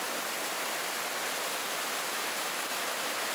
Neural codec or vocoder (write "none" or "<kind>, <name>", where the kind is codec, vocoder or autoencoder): none